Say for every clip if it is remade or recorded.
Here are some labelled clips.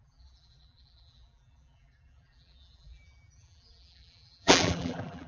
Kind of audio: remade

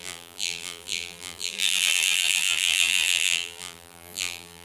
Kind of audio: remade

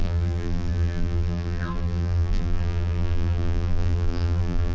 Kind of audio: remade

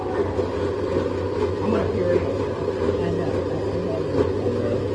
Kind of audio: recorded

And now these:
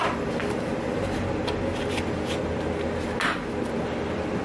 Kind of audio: remade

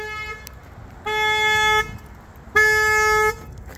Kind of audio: recorded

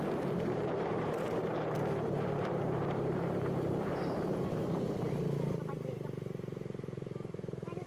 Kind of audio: remade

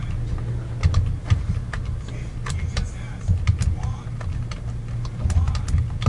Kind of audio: recorded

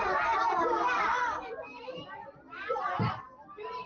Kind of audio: recorded